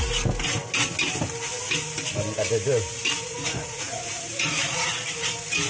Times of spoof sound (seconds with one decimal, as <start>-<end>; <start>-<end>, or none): 3.3-4.9